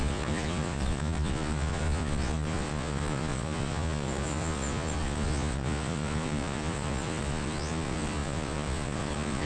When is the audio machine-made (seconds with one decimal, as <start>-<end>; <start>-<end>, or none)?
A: 0.0-9.5

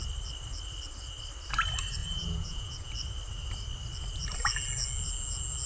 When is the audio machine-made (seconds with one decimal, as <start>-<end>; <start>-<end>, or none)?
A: 2.0-2.9

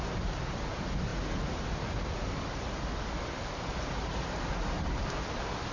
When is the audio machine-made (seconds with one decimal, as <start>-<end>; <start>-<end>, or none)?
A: none

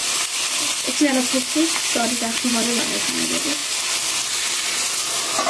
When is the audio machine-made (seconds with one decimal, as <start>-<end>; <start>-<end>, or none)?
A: none

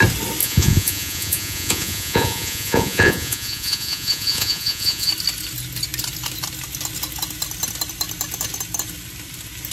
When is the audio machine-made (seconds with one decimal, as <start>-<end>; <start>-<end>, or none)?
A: 0.4-5.1

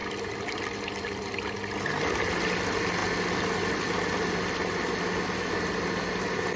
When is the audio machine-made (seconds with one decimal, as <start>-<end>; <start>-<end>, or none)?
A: none